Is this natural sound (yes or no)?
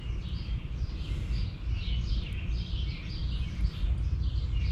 yes